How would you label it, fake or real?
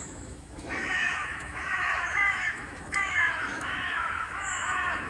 fake